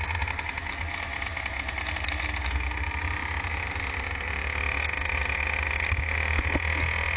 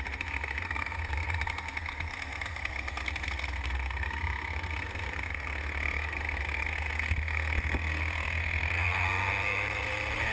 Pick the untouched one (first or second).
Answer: first